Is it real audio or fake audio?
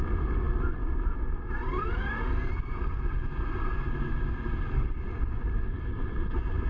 real